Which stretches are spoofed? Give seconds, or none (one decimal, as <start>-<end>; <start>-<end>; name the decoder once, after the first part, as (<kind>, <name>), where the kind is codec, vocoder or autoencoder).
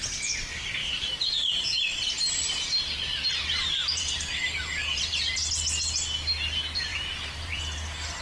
0.8-3.3 (vocoder, BigVGAN v2); 3.8-5.5; 6.9-7.6